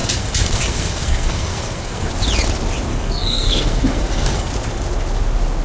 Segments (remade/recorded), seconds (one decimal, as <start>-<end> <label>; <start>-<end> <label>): 0.0-2.1 remade; 2.1-2.9 recorded; 2.9-4.5 remade; 4.5-5.6 recorded